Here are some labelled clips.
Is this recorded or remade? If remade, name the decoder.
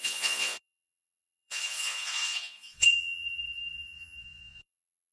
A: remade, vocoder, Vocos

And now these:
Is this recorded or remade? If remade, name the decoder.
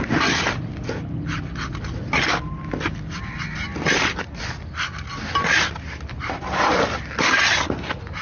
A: recorded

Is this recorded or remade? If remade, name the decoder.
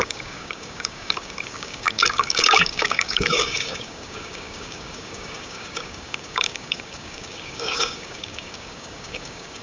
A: remade, codec, DAC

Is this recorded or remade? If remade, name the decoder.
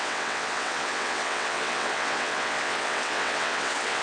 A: remade, vocoder, WaveNeXt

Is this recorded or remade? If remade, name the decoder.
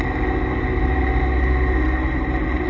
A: recorded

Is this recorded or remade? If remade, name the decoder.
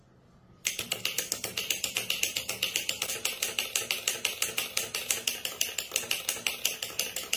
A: recorded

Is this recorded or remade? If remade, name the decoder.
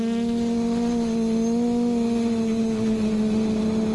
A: recorded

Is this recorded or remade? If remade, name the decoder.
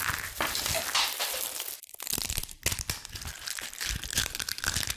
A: recorded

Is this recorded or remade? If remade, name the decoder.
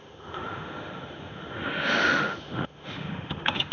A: remade, autoencoder, DAC-VAE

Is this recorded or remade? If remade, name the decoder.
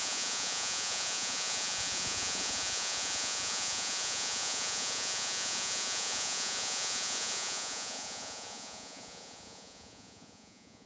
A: remade, vocoder, Vocos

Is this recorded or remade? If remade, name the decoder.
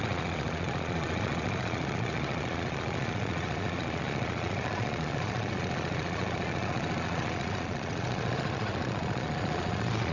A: remade, vocoder, Vocos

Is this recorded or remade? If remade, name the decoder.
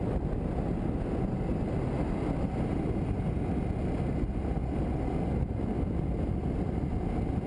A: recorded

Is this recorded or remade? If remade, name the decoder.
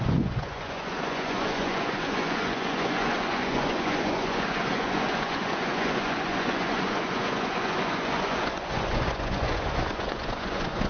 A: remade, vocoder, Vocos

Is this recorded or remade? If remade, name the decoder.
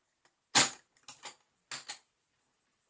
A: recorded